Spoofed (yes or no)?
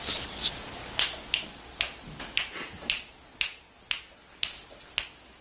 no